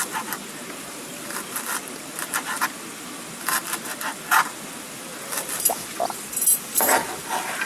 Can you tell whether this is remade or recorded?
recorded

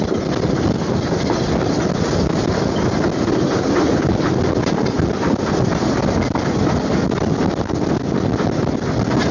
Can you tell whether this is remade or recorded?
recorded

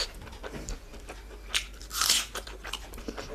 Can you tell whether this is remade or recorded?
recorded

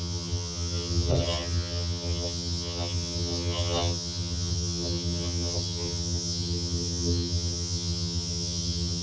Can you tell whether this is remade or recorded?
remade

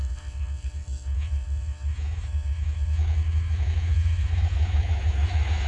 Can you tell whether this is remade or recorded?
remade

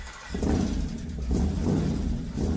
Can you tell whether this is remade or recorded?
remade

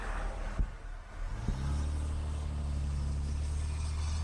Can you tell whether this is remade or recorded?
recorded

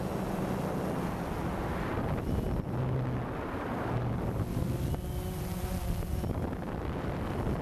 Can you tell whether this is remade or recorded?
recorded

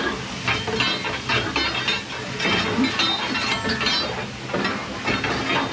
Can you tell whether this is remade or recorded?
recorded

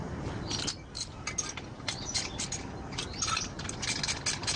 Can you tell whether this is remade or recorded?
recorded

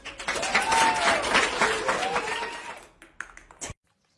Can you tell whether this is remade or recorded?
recorded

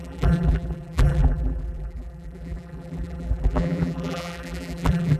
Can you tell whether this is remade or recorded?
remade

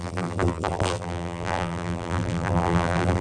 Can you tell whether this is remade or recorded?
remade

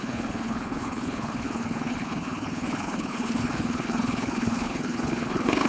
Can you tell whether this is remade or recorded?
remade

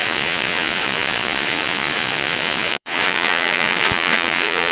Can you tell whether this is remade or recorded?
remade